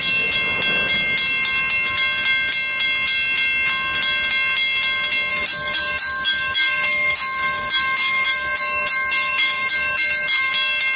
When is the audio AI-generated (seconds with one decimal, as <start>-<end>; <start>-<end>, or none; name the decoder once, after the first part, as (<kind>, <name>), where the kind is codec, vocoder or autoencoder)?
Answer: 5.3-10.5 (autoencoder, DAC-VAE)